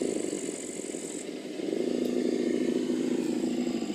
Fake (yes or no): no